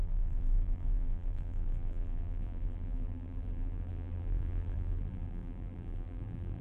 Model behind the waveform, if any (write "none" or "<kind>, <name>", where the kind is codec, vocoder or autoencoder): vocoder, BigVGAN v2